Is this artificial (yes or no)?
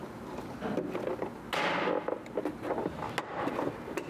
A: no